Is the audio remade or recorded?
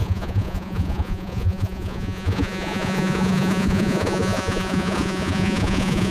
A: remade